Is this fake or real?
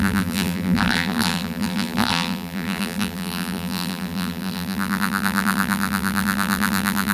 fake